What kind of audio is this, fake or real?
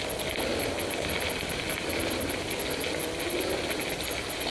real